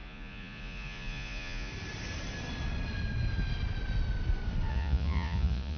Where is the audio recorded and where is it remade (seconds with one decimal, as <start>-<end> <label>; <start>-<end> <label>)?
0.0-1.7 remade; 1.7-4.7 recorded; 4.7-5.8 remade